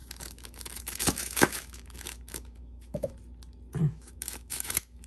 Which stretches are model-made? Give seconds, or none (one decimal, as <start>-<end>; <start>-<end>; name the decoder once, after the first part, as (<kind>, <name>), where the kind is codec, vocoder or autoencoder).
0.0-3.1 (autoencoder, DAC-VAE); 3.8-5.1